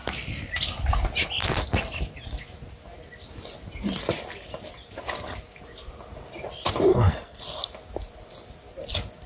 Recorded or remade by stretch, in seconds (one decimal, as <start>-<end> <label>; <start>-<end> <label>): 0.0-6.9 recorded; 6.9-7.4 remade; 7.4-9.3 recorded